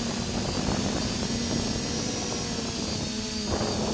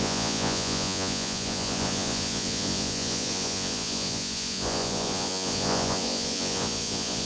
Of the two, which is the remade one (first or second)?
second